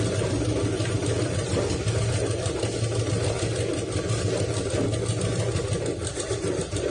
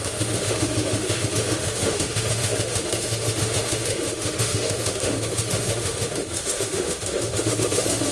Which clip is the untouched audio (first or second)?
first